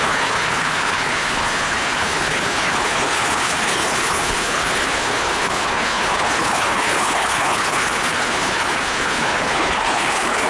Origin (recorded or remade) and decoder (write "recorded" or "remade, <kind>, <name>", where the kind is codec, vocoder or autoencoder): remade, codec, HILCodec